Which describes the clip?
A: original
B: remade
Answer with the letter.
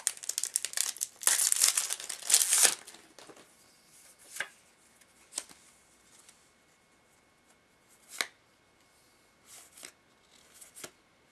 A